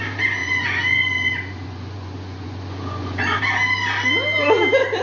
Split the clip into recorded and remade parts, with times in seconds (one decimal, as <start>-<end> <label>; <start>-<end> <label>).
0.0-0.4 recorded; 0.4-3.4 remade; 3.4-5.0 recorded